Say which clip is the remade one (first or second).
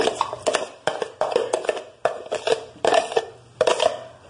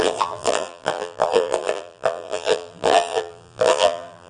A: second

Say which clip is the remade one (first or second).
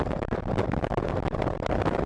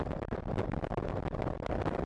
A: first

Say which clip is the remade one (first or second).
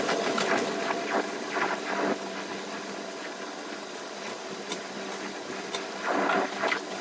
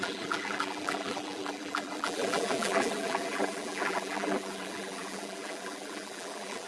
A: second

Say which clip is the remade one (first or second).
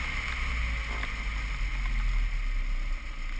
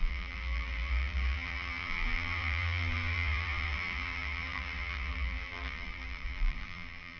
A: second